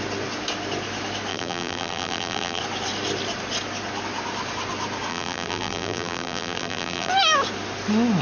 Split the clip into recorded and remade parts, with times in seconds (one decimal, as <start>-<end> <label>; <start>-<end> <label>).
0.0-1.3 recorded; 1.3-2.6 remade; 2.6-5.1 recorded; 5.1-7.1 remade; 7.1-8.2 recorded